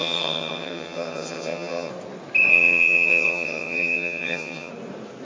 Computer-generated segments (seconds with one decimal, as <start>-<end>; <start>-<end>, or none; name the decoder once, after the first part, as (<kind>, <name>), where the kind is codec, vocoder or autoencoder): 0.0-1.9 (vocoder, HiFi-GAN); 2.5-4.7